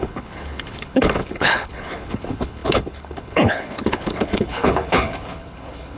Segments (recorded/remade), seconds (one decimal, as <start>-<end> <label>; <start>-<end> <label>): 0.0-6.0 remade